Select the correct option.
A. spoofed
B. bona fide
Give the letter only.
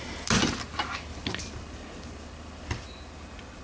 B